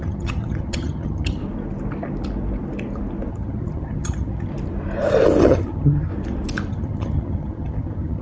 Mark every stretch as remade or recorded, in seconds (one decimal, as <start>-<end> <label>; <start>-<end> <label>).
0.0-1.4 remade; 1.4-3.3 recorded; 3.3-4.5 remade; 4.5-5.4 recorded; 5.4-6.1 remade; 6.1-6.7 recorded; 6.7-8.2 remade